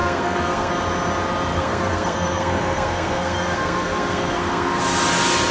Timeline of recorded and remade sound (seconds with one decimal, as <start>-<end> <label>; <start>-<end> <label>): 0.0-0.7 remade; 0.7-1.5 recorded; 1.5-4.8 remade; 4.8-5.5 recorded